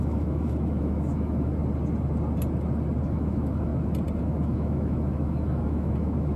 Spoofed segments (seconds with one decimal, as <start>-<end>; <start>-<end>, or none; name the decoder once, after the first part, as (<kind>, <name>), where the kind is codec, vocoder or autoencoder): 0.0-1.6 (autoencoder, DAC-VAE); 3.1-3.7; 4.2-6.4